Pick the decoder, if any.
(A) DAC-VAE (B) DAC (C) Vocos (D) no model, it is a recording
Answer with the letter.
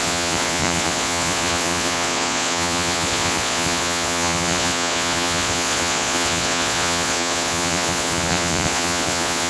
C